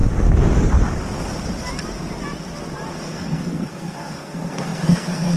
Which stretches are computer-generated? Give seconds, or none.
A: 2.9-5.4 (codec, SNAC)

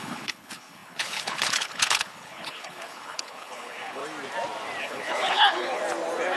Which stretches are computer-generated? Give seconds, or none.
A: 0.0-4.0 (codec, HILCodec); 4.8-5.8

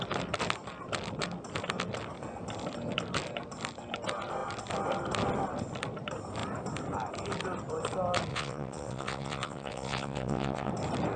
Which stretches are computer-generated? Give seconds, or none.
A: 8.3-10.7 (vocoder, WaveNeXt)

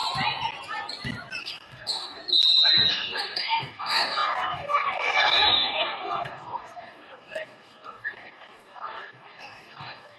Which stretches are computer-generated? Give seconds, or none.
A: 1.4-2.2 (codec, DAC); 2.9-10.2

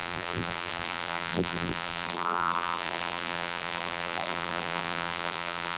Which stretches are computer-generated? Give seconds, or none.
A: 0.0-5.8 (vocoder, BigVGAN v2)